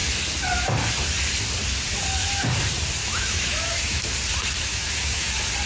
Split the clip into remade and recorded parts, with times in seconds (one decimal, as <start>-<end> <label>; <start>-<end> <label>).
0.0-3.0 recorded; 3.0-4.1 remade; 4.1-4.7 recorded; 4.7-5.3 remade; 5.3-5.7 recorded

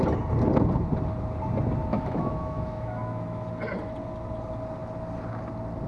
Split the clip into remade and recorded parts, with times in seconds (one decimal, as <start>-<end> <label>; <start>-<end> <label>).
0.0-1.9 recorded; 1.9-3.5 remade; 3.5-5.9 recorded

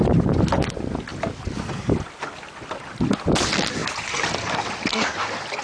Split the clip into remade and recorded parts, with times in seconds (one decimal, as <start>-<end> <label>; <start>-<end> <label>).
0.0-5.6 recorded